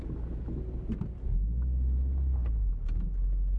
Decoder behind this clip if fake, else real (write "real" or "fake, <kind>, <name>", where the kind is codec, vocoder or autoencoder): real